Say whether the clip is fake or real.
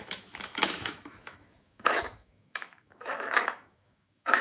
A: fake